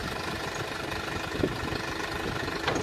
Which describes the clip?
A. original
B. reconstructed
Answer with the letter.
A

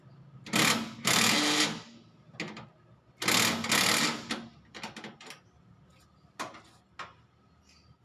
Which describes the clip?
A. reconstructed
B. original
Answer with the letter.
B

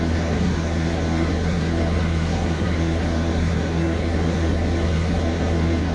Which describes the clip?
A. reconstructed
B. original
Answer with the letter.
A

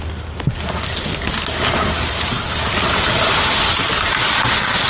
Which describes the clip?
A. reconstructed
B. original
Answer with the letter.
B